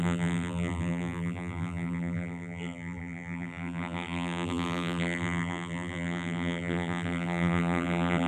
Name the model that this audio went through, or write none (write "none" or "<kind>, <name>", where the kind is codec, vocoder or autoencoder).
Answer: vocoder, BigVGAN v2